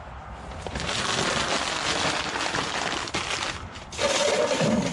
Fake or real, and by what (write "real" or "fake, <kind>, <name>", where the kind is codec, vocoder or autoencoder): real